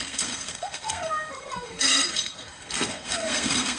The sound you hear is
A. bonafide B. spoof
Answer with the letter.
B